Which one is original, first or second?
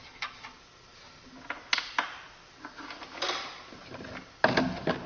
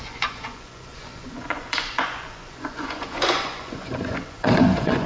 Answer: first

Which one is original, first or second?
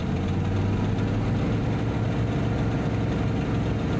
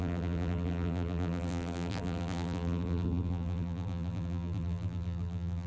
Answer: first